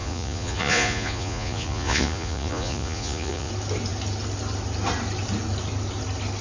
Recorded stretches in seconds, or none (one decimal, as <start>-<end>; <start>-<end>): 3.5-6.4